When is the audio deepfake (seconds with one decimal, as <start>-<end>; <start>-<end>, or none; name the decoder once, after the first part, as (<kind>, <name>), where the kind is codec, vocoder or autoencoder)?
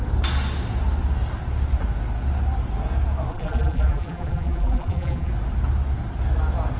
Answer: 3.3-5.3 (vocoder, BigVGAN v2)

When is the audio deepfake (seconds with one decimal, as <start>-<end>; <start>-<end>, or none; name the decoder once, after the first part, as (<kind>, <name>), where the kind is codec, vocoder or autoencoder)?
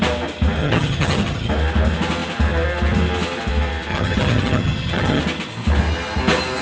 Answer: 0.6-1.5 (vocoder, HiFi-GAN); 3.9-5.2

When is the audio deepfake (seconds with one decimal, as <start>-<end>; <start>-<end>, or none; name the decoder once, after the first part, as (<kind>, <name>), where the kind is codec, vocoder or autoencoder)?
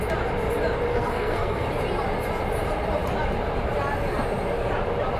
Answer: 0.9-1.7 (codec, SNAC)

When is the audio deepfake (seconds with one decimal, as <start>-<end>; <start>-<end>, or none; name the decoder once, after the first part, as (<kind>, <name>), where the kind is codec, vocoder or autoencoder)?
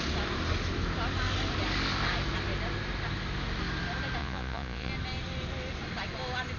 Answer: 4.2-4.9 (vocoder, Vocos)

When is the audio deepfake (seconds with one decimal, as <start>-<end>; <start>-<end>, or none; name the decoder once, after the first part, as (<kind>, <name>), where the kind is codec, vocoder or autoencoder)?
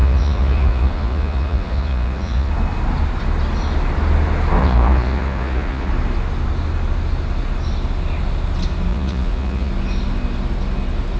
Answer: 0.0-2.5 (vocoder, Vocos); 4.6-5.9; 8.9-9.7